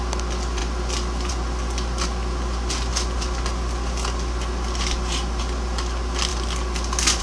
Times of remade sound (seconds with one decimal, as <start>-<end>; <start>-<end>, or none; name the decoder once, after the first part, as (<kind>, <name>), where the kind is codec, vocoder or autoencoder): none